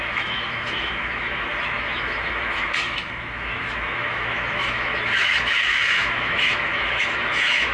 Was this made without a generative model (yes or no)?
no